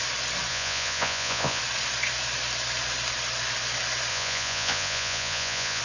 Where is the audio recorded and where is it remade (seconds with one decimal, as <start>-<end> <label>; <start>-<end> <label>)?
0.0-0.5 recorded; 0.5-1.6 remade; 1.6-4.1 recorded; 4.1-5.8 remade